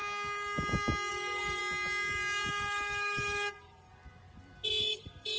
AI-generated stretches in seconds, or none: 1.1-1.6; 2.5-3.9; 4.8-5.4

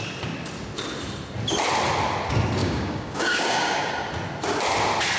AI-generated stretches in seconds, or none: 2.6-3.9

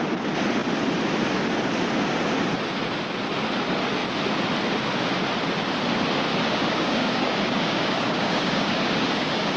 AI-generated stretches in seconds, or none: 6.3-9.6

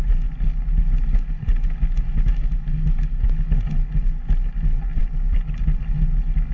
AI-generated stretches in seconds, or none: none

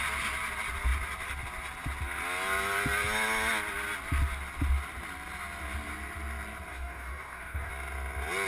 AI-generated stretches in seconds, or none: 6.7-7.7

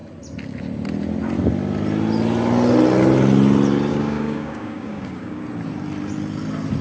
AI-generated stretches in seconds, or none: 3.9-5.4

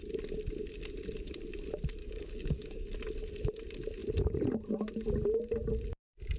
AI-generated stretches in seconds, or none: 2.0-2.9